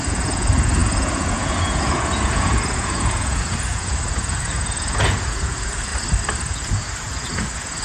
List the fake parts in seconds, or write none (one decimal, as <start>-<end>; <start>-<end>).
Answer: 0.0-5.9; 6.5-7.8

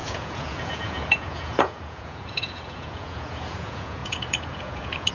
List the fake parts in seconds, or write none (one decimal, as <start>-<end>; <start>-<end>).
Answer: 0.0-5.1